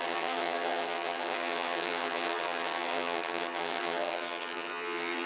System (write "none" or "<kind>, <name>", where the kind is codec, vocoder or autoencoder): vocoder, HiFi-GAN